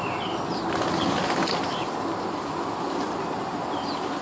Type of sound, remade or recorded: recorded